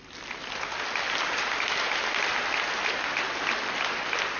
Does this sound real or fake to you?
real